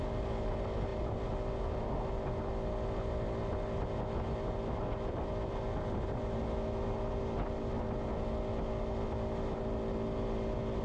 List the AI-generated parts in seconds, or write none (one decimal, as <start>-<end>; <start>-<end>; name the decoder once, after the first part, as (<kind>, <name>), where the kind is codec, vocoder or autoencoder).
none